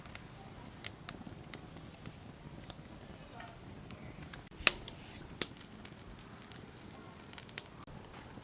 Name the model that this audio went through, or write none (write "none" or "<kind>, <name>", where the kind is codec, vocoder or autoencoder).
none